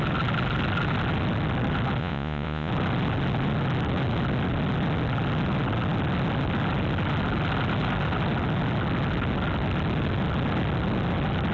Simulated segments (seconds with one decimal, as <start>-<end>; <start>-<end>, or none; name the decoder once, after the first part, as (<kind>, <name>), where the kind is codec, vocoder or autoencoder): 2.0-2.7 (vocoder, Vocos)